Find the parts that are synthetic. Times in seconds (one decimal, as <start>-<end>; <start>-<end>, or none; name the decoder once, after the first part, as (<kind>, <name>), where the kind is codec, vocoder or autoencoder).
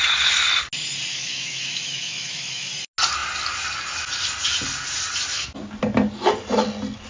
1.1-2.7 (autoencoder, DAC-VAE)